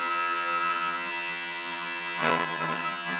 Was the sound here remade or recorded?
remade